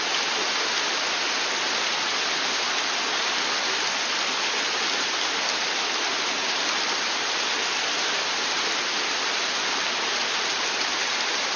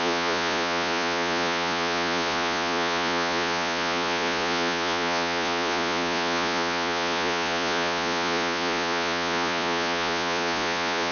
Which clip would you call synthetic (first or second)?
second